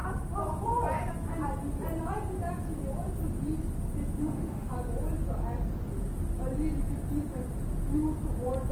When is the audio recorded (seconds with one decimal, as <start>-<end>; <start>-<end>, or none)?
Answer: 0.0-4.2; 4.7-8.7